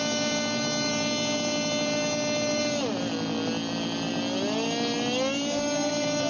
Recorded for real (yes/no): yes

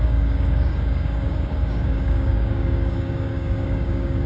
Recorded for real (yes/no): no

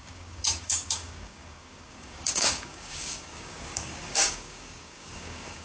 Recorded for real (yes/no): no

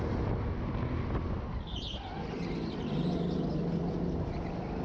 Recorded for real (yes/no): yes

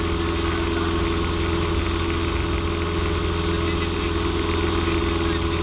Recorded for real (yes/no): yes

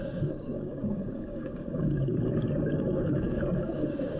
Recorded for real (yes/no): no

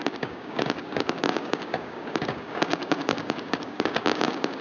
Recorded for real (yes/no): no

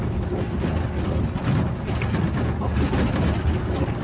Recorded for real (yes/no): yes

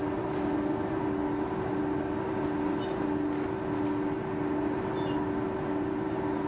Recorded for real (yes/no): yes